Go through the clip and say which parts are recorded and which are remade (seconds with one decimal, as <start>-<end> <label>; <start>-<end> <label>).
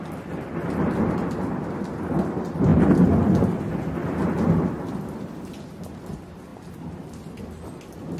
0.0-8.2 recorded